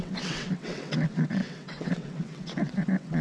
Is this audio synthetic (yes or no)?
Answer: yes